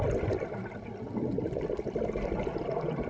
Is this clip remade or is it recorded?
recorded